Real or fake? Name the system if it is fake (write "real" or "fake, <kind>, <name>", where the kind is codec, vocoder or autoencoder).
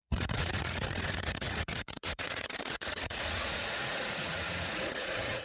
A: fake, vocoder, Vocos